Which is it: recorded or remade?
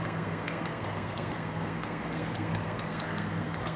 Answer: remade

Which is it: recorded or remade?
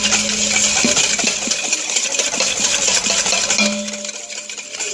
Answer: recorded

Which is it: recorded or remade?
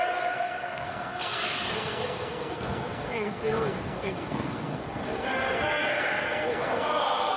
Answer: remade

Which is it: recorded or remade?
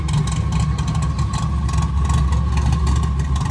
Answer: recorded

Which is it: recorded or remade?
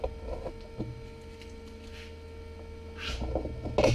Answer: recorded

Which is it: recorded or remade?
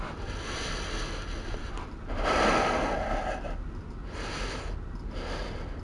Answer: recorded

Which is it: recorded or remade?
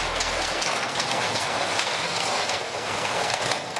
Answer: remade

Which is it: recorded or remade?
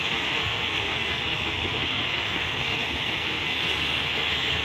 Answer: remade